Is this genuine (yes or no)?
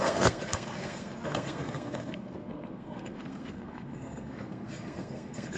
no